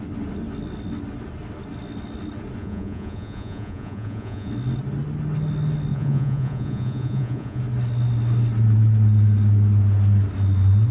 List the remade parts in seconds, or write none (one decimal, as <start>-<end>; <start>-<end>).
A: 2.6-4.5; 5.9-7.6